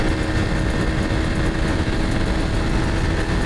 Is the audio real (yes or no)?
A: yes